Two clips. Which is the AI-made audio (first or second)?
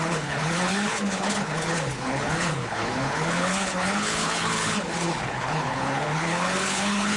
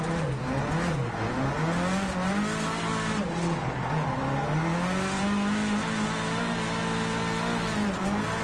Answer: first